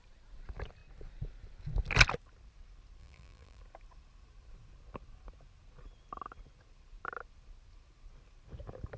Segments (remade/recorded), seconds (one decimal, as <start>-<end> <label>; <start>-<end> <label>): 0.0-3.0 recorded; 3.0-3.6 remade; 3.6-9.0 recorded